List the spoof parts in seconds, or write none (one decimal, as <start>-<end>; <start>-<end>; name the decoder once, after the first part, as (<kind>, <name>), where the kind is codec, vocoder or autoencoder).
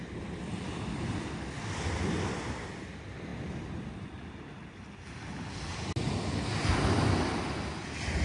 none